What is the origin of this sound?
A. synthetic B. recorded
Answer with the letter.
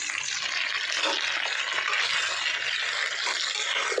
B